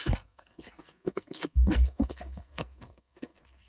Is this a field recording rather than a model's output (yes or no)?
no